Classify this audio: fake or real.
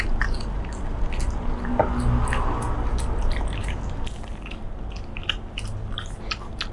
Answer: real